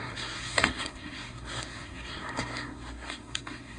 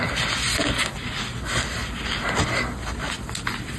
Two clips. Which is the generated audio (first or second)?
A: first